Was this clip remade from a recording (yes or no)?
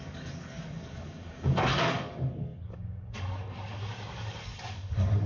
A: yes